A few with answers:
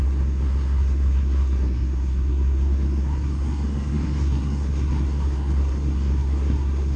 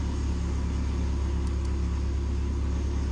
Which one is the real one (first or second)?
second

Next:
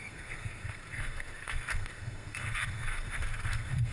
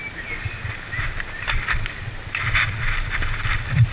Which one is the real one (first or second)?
second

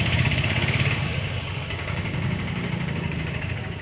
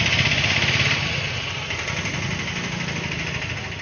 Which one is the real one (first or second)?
second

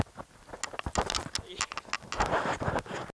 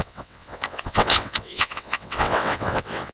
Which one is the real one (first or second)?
first